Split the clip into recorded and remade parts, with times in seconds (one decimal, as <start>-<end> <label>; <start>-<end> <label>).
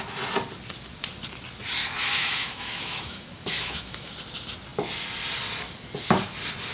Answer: 0.0-1.8 recorded; 1.8-4.1 remade; 4.1-6.7 recorded